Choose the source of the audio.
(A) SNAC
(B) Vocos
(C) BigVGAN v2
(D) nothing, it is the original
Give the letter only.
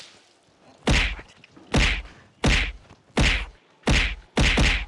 D